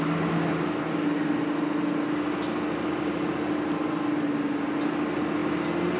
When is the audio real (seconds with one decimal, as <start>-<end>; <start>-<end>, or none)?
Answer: 0.0-6.0